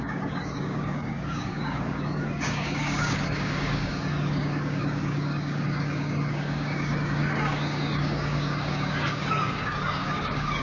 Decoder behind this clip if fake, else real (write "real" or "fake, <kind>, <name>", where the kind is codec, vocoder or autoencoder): fake, codec, DAC